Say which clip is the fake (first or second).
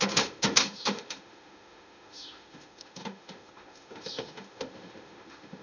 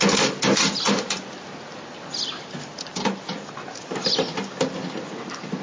first